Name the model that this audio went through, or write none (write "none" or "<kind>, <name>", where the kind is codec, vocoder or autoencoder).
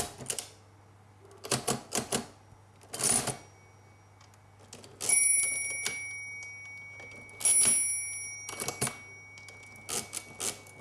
none